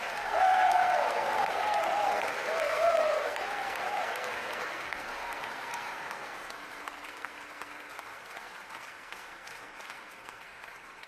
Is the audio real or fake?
fake